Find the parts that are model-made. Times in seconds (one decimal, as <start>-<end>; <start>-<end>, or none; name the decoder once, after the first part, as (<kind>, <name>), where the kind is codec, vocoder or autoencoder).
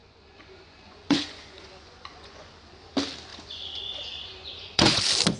0.0-2.9 (vocoder, Vocos); 3.3-5.0